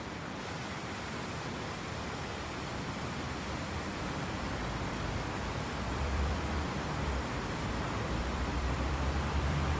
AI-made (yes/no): yes